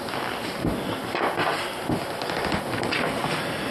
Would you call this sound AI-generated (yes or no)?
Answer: no